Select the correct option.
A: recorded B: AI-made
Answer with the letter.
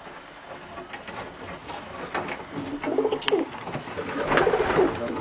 A